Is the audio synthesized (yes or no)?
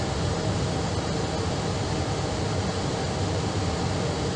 no